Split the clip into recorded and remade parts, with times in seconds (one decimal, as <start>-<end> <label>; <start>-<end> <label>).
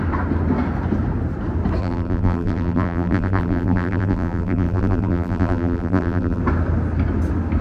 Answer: 0.0-1.8 recorded; 1.8-6.4 remade; 6.4-7.6 recorded